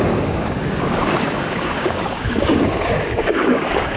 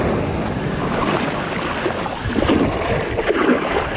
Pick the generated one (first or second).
first